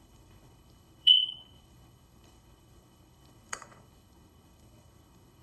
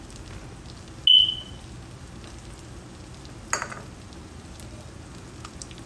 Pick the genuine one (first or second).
second